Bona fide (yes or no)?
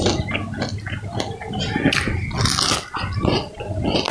yes